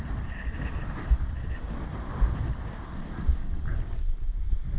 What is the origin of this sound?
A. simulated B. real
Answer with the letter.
B